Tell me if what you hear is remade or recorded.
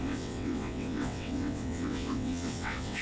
remade